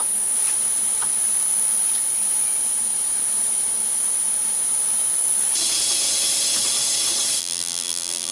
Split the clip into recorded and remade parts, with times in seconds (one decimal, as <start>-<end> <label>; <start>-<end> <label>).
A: 0.0-7.4 recorded; 7.4-8.3 remade